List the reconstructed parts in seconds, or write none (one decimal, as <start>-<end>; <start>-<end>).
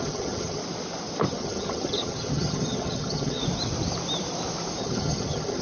0.0-0.6; 1.3-3.4; 4.8-5.6